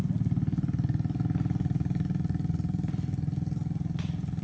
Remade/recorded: recorded